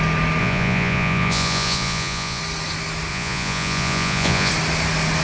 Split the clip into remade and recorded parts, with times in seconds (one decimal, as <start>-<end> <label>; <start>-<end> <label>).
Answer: 0.0-0.4 recorded; 0.4-2.4 remade; 2.4-3.1 recorded; 3.1-4.5 remade; 4.5-5.2 recorded